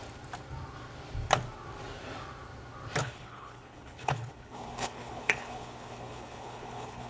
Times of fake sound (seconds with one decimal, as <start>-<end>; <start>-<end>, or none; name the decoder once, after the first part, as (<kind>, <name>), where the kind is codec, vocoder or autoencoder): 3.0-7.1 (codec, HILCodec)

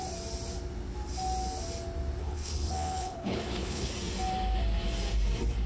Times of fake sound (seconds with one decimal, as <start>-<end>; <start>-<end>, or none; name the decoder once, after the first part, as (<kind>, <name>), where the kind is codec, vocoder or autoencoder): 2.2-3.9 (codec, HILCodec)

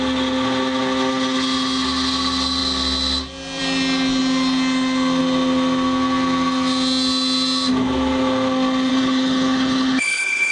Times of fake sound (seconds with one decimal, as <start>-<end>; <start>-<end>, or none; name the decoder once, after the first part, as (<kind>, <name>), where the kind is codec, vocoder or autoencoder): 8.9-10.5 (codec, HILCodec)

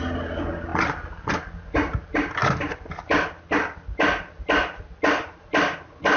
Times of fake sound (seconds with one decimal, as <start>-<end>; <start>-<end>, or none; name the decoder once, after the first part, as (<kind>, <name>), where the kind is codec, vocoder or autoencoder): none

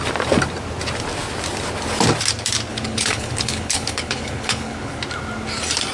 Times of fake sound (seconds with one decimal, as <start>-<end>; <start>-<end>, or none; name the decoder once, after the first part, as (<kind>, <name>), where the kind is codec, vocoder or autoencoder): 2.7-5.0 (codec, HILCodec)

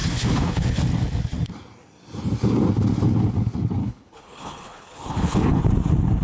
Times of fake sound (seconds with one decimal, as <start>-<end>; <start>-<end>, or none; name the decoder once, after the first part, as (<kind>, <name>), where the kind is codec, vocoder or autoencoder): 0.0-0.8 (codec, HILCodec); 3.8-5.6

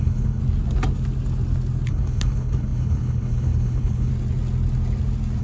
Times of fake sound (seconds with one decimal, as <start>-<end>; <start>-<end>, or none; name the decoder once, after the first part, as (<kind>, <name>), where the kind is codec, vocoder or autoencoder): 0.0-0.4 (codec, HILCodec); 1.9-4.1